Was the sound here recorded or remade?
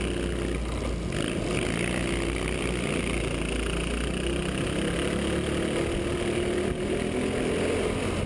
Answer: recorded